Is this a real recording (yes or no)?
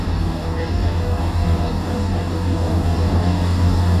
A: no